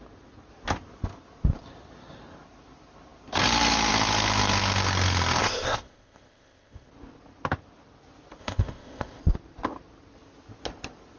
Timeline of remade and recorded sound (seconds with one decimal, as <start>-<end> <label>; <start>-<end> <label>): 0.0-5.4 recorded; 5.4-6.9 remade; 6.9-8.4 recorded; 8.4-9.2 remade; 9.2-11.2 recorded